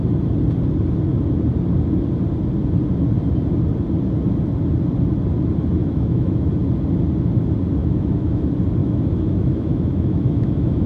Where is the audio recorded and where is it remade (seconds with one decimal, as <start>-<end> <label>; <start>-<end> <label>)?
0.0-5.8 recorded; 5.8-6.5 remade; 6.5-7.8 recorded; 7.8-8.4 remade; 8.4-8.8 recorded; 8.8-10.9 remade